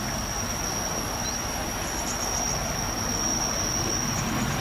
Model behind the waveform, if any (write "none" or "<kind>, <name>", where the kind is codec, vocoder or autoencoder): none